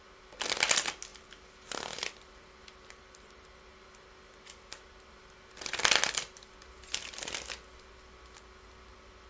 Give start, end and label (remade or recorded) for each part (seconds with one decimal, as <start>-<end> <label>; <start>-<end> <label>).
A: 0.0-9.3 recorded

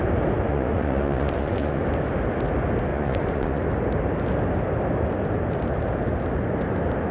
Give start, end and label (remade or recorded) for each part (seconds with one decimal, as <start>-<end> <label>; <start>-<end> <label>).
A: 0.0-0.5 recorded; 0.5-1.8 remade; 1.8-2.9 recorded; 2.9-3.6 remade; 3.6-7.1 recorded

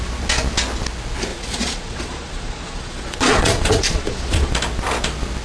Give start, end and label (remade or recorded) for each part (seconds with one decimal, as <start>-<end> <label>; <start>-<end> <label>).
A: 0.0-1.3 recorded; 1.3-4.5 remade; 4.5-5.4 recorded

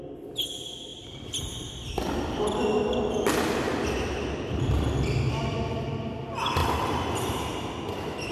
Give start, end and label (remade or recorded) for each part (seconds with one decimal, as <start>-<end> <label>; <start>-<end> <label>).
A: 0.0-6.6 recorded; 6.6-7.7 remade; 7.7-8.3 recorded

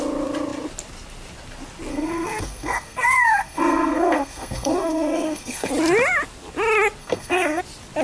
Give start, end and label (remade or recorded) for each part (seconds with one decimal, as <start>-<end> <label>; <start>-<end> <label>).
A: 0.0-1.9 recorded; 1.9-5.7 remade; 5.7-7.0 recorded; 7.0-7.6 remade; 7.6-8.0 recorded